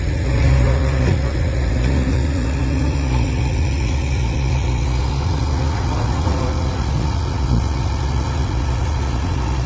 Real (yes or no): no